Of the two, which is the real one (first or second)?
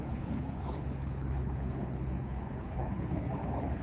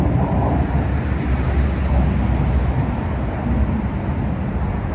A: second